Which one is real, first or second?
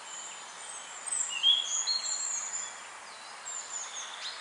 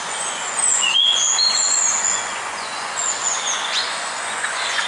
first